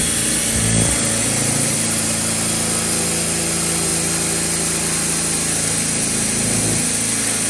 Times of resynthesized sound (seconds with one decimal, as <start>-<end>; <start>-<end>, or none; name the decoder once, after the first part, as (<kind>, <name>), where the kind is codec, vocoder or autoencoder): none